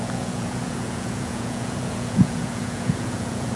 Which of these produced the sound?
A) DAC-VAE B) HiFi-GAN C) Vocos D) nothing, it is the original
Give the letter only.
C